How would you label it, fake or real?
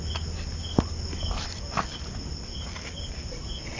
real